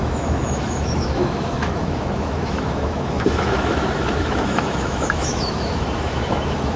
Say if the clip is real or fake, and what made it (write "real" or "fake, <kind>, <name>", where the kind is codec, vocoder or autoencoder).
fake, autoencoder, DAC-VAE